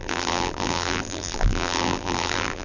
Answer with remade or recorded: remade